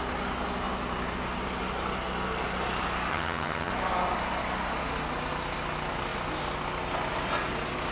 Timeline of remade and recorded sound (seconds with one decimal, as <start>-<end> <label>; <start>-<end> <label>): 0.0-3.1 recorded; 3.1-3.7 remade; 3.7-7.9 recorded